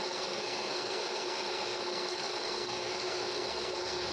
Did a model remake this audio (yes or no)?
yes